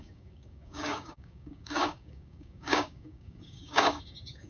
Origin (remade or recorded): remade